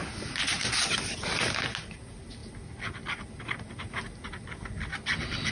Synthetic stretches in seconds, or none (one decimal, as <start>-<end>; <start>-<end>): none